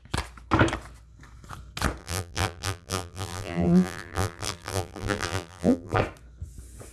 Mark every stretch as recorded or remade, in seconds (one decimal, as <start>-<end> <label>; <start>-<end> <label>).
0.0-2.0 recorded; 2.0-6.0 remade; 6.0-6.9 recorded